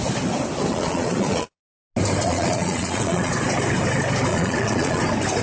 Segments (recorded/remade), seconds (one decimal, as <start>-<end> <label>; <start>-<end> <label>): 0.0-0.7 recorded; 0.7-1.6 remade; 1.6-2.2 recorded; 2.2-3.3 remade; 3.3-4.3 recorded; 4.3-5.0 remade; 5.0-5.4 recorded